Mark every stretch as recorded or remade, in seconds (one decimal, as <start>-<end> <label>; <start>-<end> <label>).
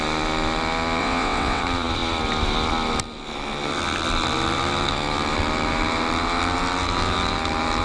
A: 0.0-1.0 recorded; 1.0-1.6 remade; 1.6-7.8 recorded